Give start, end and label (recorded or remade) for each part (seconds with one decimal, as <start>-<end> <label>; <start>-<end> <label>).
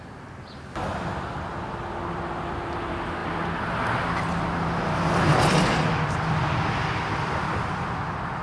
0.0-5.3 recorded; 5.3-8.4 remade